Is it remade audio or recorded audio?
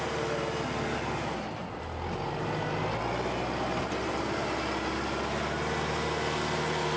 recorded